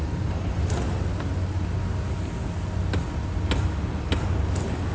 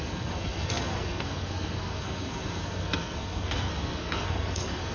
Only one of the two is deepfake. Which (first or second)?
second